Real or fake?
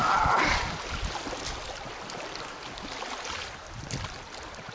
real